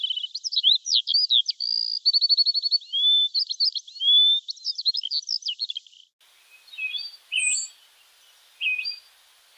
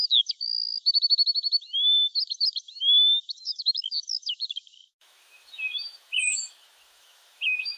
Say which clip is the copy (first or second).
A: second